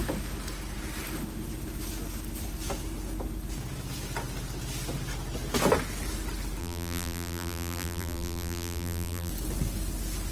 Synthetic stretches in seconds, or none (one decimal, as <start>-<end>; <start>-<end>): 6.6-9.3